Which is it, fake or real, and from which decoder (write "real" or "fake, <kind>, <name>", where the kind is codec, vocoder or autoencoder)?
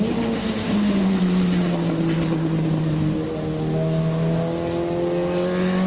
real